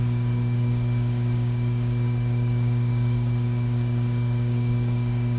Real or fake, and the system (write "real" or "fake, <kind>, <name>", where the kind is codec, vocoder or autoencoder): fake, codec, DAC